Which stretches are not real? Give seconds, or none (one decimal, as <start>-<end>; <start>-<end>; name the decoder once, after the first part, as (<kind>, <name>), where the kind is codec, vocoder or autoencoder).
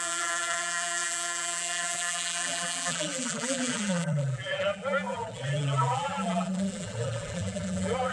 0.0-8.1 (vocoder, BigVGAN v2)